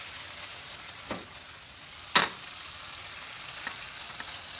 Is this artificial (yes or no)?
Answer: no